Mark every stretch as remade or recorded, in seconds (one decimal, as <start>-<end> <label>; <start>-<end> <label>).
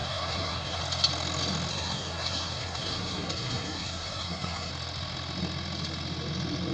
0.0-0.8 remade; 0.8-1.7 recorded; 1.7-4.7 remade; 4.7-6.7 recorded